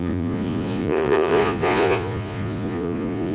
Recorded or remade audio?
remade